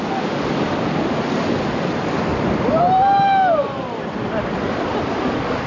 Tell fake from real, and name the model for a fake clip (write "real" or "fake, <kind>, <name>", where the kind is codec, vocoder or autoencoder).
real